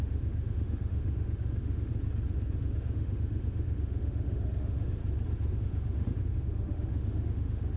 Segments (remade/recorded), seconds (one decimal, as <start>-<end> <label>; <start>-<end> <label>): 0.0-1.9 remade; 1.9-2.6 recorded; 2.6-5.0 remade; 5.0-5.5 recorded; 5.5-7.8 remade